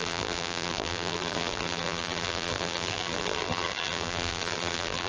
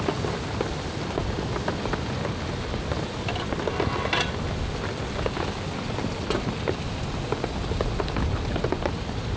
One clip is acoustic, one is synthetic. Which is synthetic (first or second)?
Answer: first